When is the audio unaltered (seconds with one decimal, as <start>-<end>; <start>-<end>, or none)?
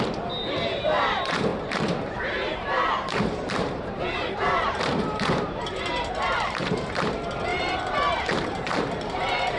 none